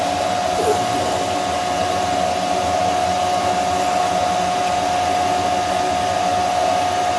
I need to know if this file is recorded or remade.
recorded